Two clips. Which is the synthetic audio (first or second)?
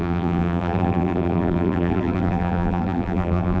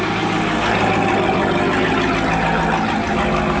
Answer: first